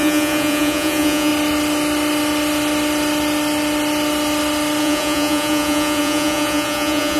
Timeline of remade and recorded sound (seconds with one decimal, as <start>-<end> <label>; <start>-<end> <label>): 0.0-1.3 remade; 1.3-4.8 recorded; 4.8-7.2 remade